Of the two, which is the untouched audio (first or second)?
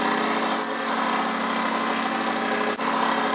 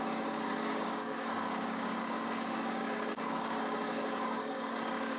first